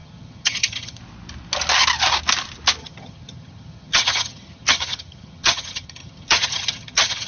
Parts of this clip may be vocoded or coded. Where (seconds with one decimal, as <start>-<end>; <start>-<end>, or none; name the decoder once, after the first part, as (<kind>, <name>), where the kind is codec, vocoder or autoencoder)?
0.0-1.0 (vocoder, HiFi-GAN); 2.8-7.3